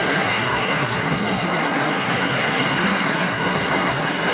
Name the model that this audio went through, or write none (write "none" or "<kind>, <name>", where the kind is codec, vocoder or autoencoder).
codec, SNAC